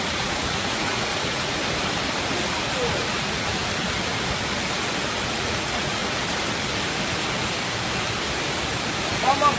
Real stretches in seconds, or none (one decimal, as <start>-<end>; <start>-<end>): 1.6-2.9; 3.6-5.3; 6.0-9.6